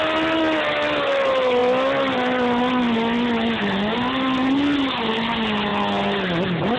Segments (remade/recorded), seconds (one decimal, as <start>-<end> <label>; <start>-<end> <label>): 0.0-6.8 recorded